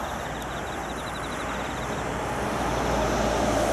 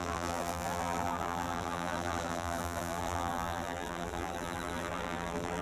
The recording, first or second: first